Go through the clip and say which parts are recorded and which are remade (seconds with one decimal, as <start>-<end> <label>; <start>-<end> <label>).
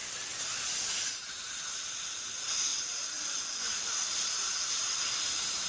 0.0-5.7 remade